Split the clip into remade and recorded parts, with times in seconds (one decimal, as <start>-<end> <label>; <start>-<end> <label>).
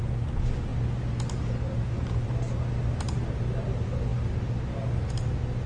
0.0-5.7 recorded